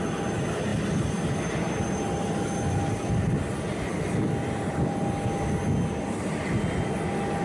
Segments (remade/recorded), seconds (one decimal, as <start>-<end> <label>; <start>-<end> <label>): 0.0-7.4 recorded